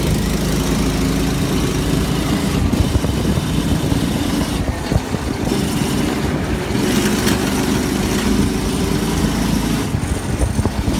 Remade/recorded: recorded